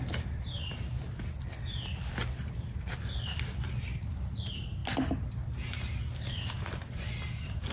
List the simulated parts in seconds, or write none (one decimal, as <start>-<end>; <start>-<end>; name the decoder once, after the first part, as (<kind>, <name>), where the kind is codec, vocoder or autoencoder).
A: none